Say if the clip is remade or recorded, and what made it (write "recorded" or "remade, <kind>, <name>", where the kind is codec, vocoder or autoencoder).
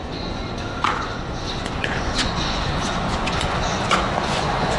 remade, vocoder, Vocos